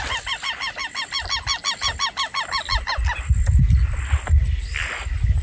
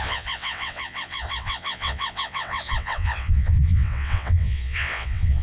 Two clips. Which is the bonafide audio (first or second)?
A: first